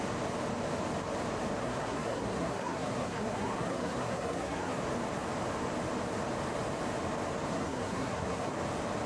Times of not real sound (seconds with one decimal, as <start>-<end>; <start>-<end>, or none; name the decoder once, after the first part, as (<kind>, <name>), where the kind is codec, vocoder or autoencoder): 1.6-4.8 (codec, SNAC); 7.5-8.5